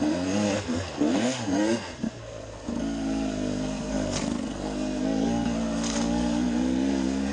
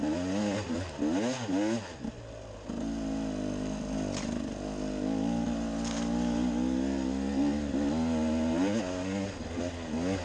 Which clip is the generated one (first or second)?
first